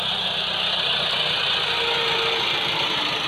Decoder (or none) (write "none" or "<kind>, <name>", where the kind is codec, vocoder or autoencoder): none